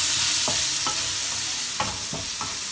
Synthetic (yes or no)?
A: no